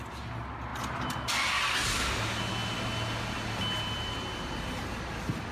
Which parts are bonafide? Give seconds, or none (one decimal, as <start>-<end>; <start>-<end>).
0.0-5.5